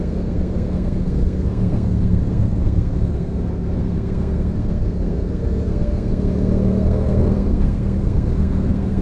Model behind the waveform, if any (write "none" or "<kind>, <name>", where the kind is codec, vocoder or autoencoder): codec, SNAC